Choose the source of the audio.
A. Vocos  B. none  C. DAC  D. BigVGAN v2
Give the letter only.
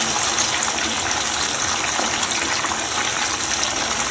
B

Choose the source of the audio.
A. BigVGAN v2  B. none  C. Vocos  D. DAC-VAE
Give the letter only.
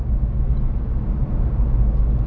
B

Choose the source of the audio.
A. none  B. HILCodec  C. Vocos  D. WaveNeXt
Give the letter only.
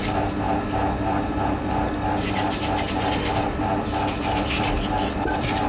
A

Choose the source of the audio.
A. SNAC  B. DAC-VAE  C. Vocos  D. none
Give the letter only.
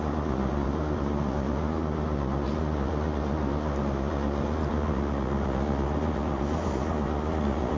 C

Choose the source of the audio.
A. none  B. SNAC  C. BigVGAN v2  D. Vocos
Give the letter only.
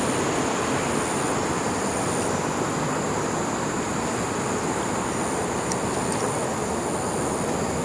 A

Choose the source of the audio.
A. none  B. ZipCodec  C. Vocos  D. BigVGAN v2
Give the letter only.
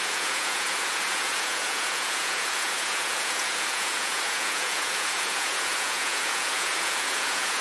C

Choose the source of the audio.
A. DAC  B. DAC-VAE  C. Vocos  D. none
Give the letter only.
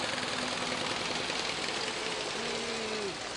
D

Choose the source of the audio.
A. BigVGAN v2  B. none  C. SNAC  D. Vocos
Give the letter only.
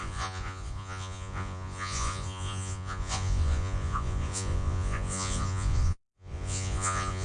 D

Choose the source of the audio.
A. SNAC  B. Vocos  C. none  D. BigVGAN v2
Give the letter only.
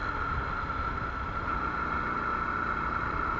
C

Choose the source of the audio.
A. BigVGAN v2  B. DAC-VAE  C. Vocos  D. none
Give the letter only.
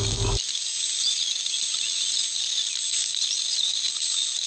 D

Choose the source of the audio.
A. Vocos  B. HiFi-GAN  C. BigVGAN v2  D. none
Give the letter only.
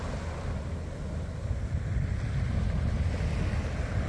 D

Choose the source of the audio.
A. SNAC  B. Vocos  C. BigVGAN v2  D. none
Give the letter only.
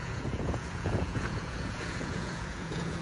B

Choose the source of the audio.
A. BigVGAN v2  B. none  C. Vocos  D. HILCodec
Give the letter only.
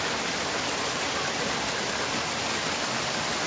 B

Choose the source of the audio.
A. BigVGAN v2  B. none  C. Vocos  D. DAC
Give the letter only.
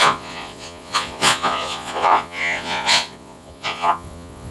C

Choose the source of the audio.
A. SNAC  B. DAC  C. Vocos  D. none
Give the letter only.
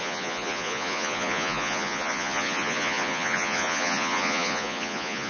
C